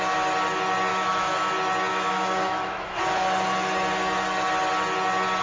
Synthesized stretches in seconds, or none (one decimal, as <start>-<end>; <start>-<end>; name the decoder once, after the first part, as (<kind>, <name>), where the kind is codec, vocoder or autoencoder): 0.9-1.5 (autoencoder, DAC-VAE); 1.9-3.0